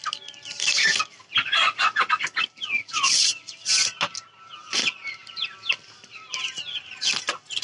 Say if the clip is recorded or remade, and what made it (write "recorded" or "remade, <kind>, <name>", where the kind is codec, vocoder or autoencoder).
recorded